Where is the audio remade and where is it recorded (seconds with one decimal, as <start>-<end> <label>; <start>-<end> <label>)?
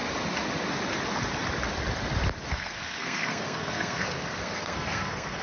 0.0-2.5 recorded; 2.5-5.4 remade